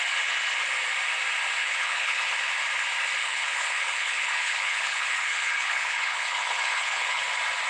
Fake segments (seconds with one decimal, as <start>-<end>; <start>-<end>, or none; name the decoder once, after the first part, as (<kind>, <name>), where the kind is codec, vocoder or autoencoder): 1.6-2.3 (codec, HILCodec); 3.2-7.2